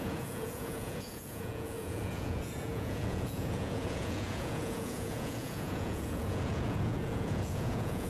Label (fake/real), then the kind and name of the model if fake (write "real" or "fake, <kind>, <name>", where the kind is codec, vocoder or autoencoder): fake, vocoder, Vocos